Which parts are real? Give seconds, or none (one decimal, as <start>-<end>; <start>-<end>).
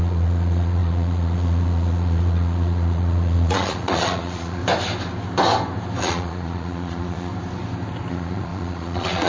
4.6-6.0; 7.3-8.1